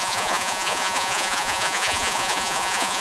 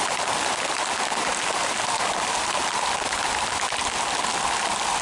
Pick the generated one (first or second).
first